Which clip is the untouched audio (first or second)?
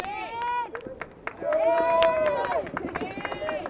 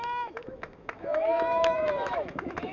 first